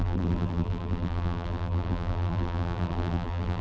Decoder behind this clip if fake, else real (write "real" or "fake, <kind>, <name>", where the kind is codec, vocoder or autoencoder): fake, vocoder, BigVGAN v2